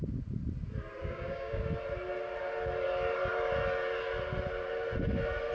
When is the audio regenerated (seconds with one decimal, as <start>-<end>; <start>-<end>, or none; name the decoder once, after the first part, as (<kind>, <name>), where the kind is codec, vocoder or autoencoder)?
1.0-1.6 (codec, DAC)